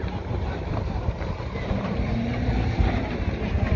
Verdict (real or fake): real